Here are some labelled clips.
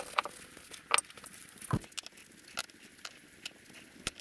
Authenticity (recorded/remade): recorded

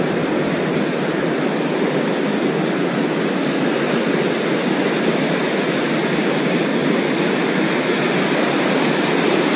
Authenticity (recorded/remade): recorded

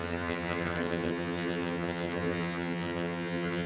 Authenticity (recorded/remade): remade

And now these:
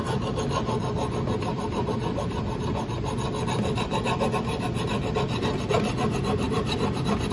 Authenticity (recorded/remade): recorded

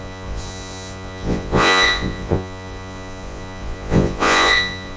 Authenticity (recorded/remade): remade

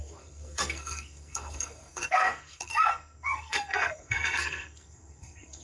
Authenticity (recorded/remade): remade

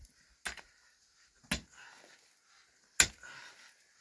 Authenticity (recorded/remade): recorded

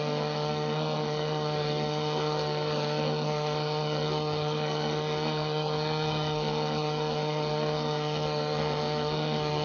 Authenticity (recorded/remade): remade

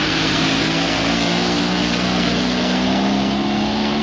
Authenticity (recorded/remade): remade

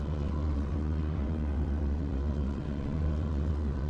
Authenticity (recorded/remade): remade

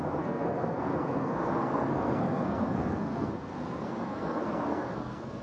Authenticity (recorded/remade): remade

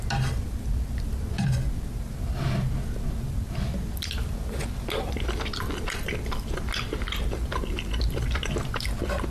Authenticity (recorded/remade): recorded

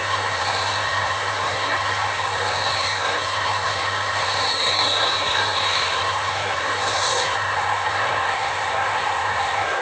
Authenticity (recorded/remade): remade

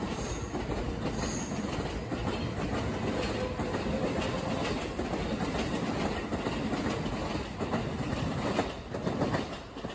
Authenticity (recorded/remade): recorded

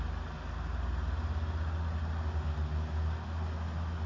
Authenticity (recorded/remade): recorded